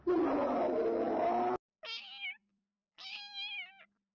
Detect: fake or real real